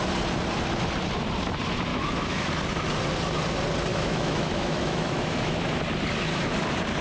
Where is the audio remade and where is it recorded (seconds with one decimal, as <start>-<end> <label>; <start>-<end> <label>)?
0.0-1.9 recorded; 1.9-2.5 remade; 2.5-3.9 recorded; 3.9-5.8 remade; 5.8-7.0 recorded